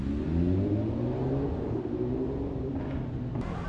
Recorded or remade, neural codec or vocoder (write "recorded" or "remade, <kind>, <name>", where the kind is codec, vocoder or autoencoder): recorded